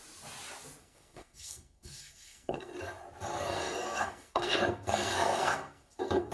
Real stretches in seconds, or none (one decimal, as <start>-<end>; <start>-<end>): 0.0-0.8; 2.7-3.3

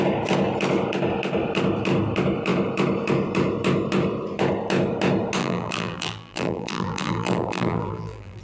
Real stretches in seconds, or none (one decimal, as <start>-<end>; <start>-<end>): 0.0-5.4

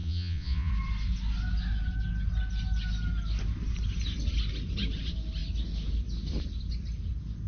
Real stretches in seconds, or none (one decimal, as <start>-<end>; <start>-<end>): 0.7-7.5